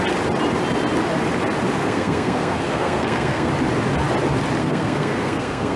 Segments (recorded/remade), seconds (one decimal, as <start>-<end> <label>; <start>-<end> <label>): 0.0-1.8 recorded; 1.8-3.5 remade; 3.5-4.6 recorded; 4.6-5.8 remade